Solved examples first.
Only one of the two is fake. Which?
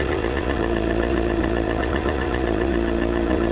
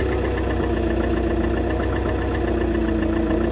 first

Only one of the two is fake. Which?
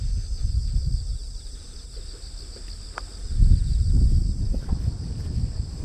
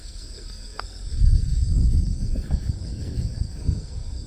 second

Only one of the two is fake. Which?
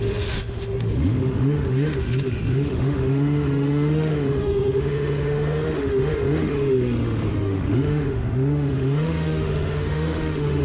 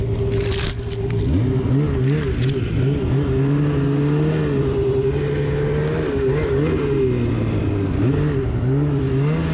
first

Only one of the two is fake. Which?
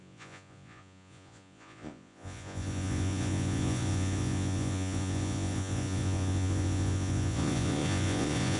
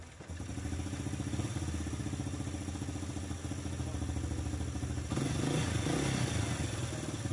first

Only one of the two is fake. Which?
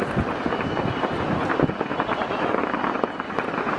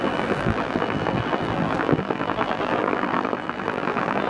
second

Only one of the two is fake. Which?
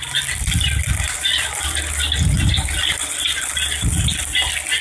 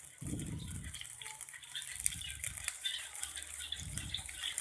second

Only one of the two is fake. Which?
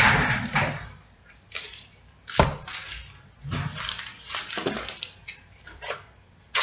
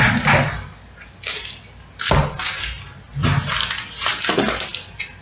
first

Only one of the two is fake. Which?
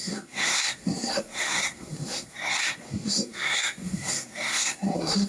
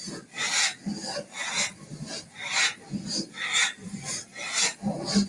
first